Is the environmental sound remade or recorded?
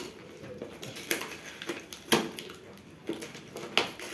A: recorded